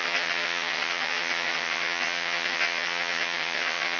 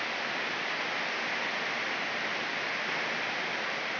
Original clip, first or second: second